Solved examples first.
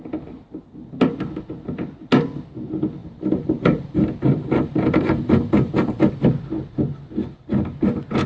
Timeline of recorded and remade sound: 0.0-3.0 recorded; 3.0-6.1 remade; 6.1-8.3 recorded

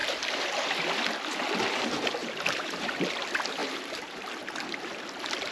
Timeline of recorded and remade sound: 0.0-2.2 recorded; 2.2-3.0 remade; 3.0-3.6 recorded; 3.6-4.3 remade; 4.3-5.5 recorded

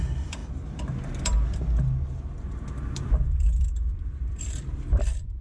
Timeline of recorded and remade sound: 0.0-0.4 remade; 0.4-2.4 recorded; 2.4-5.4 remade

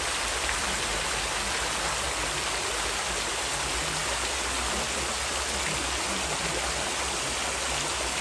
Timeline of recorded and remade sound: 0.0-8.2 recorded

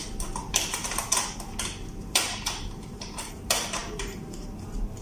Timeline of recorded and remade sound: 0.0-2.1 recorded; 2.1-5.0 remade